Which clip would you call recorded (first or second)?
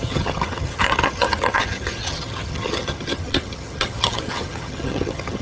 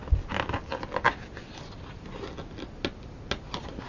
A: second